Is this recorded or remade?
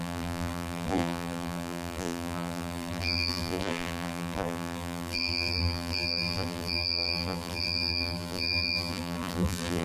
remade